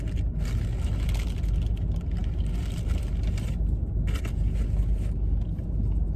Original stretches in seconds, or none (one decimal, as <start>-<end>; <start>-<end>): 0.0-6.2